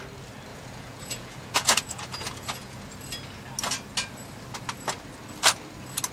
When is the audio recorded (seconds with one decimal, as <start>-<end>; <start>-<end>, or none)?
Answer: 0.0-0.5; 2.9-6.1